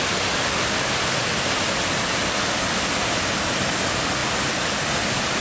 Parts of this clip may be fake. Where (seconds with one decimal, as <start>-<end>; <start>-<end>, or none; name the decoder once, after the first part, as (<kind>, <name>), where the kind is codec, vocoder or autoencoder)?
4.2-5.4 (vocoder, BigVGAN v2)